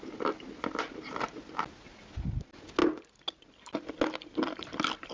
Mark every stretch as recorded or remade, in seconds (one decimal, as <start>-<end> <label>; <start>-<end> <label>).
0.0-5.1 recorded